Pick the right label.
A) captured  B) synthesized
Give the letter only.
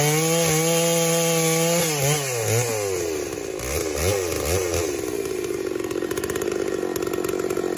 A